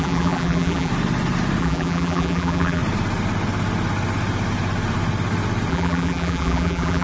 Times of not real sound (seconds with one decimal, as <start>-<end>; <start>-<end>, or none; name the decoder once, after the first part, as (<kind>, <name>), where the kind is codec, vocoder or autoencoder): 0.0-0.9 (vocoder, BigVGAN v2); 1.6-2.8; 5.7-7.0